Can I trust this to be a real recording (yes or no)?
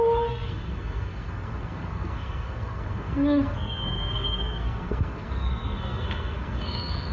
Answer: no